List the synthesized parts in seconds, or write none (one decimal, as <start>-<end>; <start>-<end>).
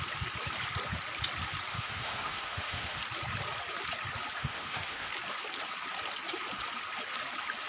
1.7-3.0; 4.4-5.1